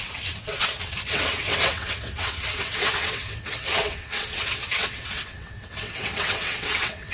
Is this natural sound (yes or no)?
no